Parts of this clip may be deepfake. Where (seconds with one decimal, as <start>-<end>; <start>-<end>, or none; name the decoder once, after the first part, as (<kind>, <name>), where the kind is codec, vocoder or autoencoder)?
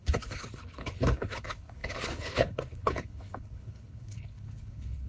0.0-5.1 (codec, HILCodec)